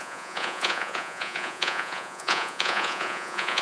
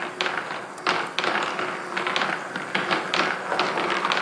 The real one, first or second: second